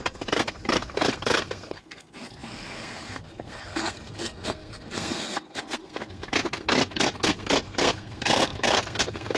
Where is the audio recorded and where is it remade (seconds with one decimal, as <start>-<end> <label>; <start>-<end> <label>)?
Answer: 0.0-9.4 remade